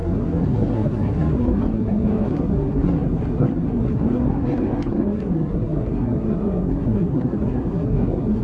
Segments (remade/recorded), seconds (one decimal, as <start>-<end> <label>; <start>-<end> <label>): 0.0-8.4 remade